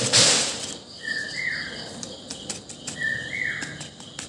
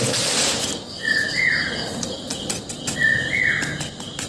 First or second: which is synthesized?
first